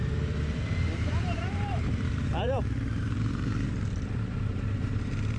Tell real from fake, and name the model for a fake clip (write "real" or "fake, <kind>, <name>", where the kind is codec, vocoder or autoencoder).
fake, vocoder, BigVGAN v2